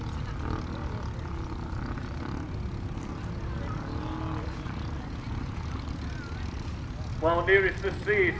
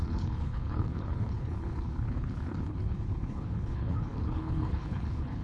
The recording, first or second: first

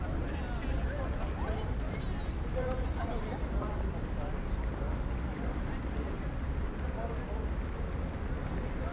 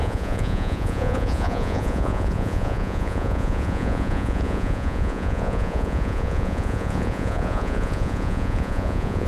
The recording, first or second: first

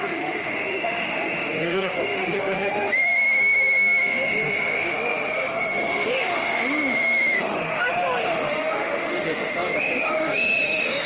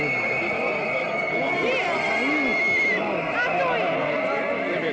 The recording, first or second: second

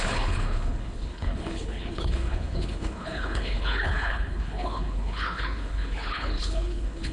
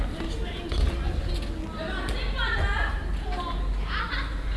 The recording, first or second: second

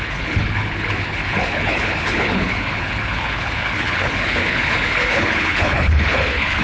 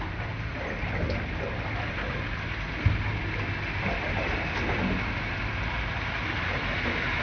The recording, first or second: second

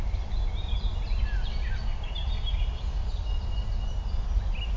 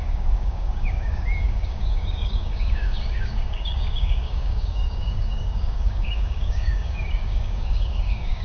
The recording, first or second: first